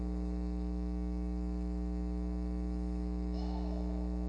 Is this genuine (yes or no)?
no